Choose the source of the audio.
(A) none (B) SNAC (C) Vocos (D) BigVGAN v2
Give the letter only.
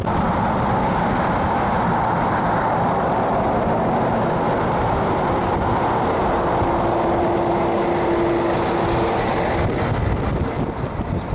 A